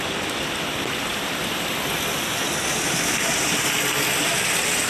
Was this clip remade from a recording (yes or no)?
no